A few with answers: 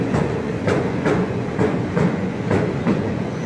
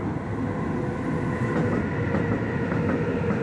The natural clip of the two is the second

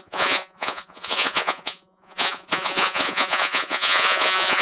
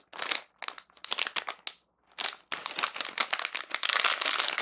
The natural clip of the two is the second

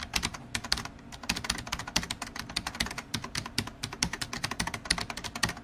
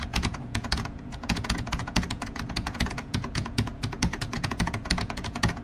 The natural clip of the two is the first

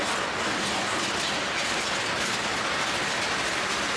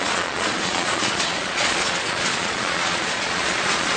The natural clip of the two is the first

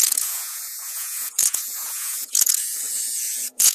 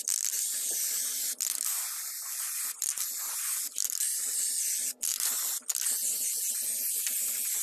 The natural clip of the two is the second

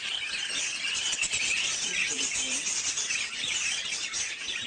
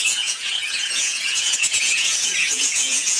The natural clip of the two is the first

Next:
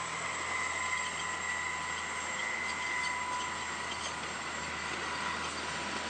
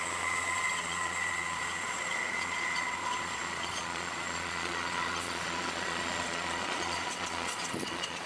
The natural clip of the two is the first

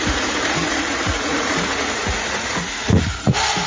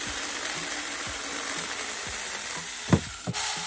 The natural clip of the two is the second